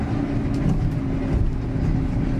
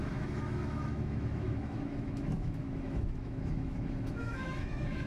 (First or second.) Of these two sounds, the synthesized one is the second